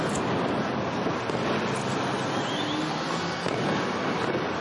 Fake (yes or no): no